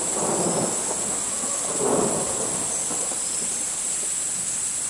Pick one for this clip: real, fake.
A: real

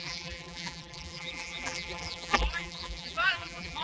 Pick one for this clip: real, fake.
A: fake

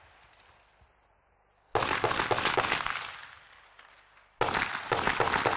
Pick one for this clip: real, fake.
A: real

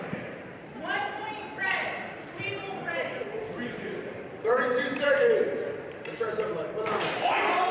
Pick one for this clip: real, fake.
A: fake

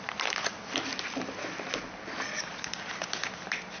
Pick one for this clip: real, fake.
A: real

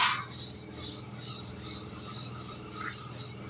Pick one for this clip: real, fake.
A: real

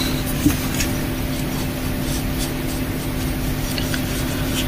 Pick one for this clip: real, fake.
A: real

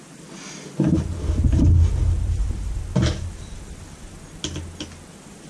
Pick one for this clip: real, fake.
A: real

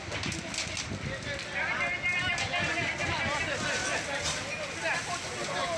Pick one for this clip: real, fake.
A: real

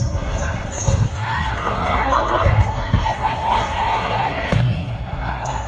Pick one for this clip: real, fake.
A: fake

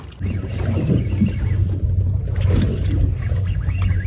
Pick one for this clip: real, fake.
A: real